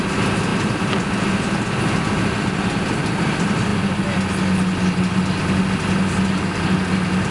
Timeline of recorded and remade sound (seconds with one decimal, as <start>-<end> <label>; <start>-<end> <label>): 0.0-7.3 recorded